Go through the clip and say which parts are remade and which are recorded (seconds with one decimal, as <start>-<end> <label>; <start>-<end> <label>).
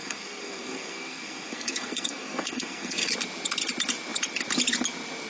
0.0-3.1 remade; 3.1-5.3 recorded